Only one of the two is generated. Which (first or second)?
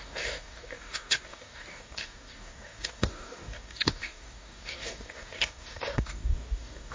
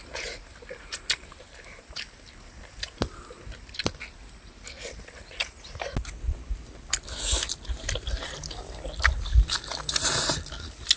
first